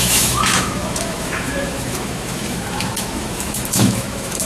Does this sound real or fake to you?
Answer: fake